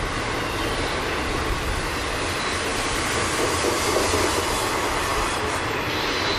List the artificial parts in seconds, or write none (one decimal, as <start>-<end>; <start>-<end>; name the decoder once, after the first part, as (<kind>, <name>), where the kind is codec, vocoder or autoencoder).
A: none